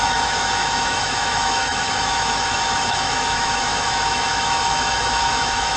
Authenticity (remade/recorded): remade